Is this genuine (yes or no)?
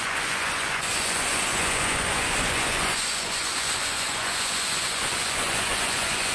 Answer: no